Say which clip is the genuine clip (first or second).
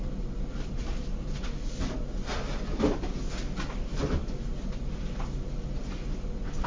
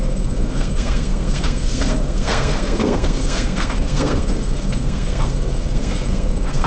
first